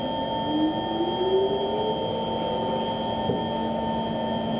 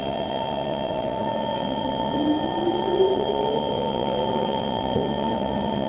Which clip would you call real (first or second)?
first